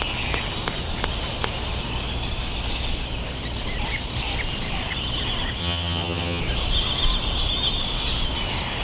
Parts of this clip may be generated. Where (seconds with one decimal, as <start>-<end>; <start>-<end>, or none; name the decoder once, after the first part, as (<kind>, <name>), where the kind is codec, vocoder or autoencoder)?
5.6-6.4 (vocoder, HiFi-GAN)